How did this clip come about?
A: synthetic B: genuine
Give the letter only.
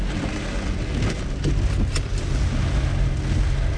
B